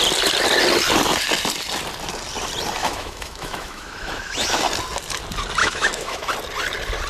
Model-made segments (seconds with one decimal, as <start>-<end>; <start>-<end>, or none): 2.8-4.6; 5.6-6.3